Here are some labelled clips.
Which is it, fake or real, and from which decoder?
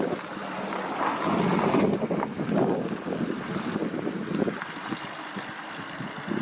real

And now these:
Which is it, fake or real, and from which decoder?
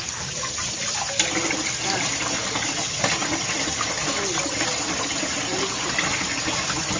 real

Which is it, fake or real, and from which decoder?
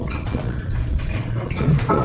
fake, vocoder, Vocos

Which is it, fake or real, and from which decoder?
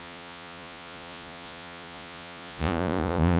fake, vocoder, Vocos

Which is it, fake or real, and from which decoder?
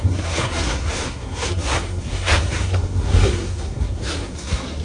fake, codec, SNAC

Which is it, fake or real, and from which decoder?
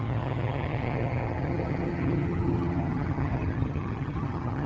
fake, vocoder, HiFi-GAN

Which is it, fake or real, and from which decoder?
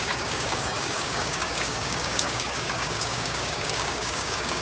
fake, codec, DAC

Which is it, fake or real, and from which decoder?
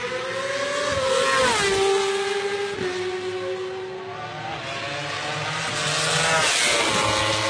real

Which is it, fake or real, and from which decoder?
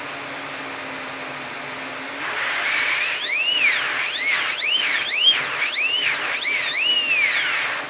real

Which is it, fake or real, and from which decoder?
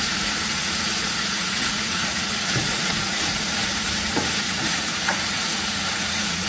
fake, vocoder, Vocos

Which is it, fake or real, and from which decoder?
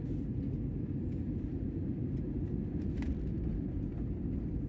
real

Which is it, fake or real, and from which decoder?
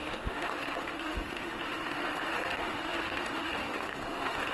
fake, autoencoder, DAC-VAE